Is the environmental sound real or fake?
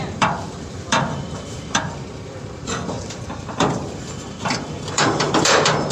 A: fake